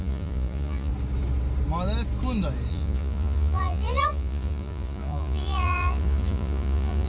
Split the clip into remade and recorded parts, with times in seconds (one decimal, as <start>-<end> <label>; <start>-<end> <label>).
0.0-0.9 remade; 0.9-2.7 recorded; 2.7-7.1 remade